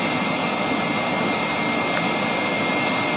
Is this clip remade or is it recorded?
recorded